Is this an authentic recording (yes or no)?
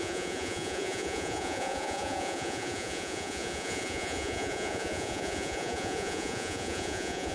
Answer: no